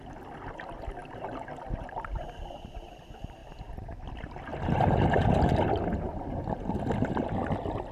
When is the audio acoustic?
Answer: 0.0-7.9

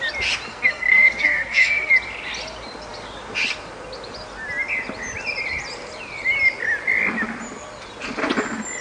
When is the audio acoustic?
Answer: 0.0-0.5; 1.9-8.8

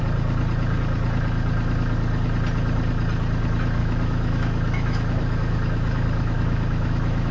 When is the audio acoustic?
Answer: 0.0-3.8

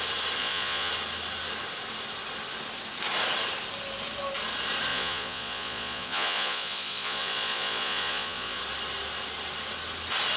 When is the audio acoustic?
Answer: 0.0-0.4; 0.9-4.9; 8.6-10.4

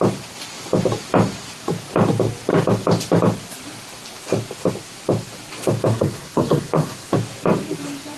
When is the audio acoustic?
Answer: 0.0-5.9; 7.1-8.2

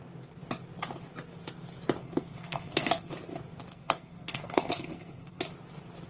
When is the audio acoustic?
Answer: 0.0-2.0; 3.1-3.7; 5.4-6.1